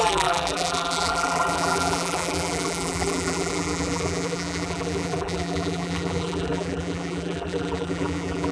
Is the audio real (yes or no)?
no